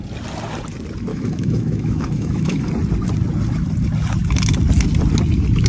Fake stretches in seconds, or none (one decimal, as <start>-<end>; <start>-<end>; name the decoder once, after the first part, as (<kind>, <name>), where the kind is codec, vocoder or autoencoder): 1.1-2.7 (autoencoder, DAC-VAE)